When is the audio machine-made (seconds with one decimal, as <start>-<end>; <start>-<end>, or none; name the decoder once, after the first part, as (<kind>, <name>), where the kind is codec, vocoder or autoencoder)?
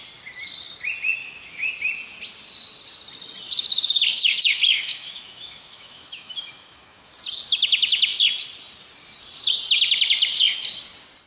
1.2-1.7 (autoencoder, DAC-VAE); 4.1-7.1